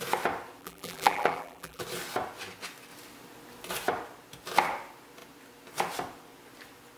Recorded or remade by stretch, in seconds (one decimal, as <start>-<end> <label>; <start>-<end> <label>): 0.0-0.6 recorded; 0.6-1.8 remade; 1.8-7.0 recorded